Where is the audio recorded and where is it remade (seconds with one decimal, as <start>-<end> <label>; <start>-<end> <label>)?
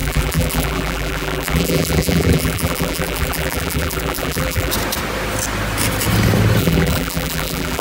0.0-4.7 remade; 4.7-6.6 recorded; 6.6-7.8 remade